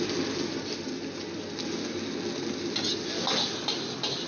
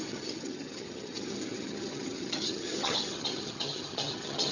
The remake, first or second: second